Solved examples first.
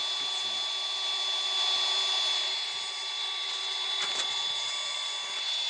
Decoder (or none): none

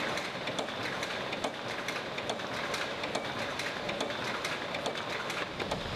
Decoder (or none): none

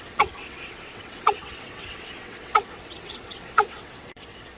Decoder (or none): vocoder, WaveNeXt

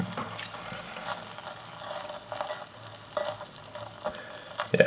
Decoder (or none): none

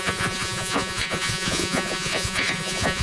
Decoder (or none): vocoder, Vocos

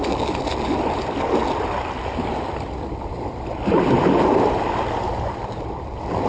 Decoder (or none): none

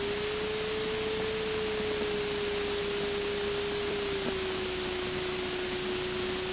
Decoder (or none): none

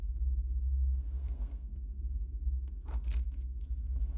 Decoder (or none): codec, SNAC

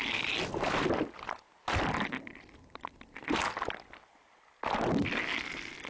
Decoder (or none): none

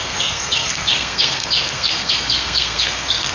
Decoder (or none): codec, SNAC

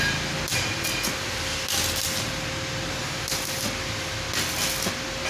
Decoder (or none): none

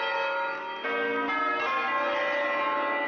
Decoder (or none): none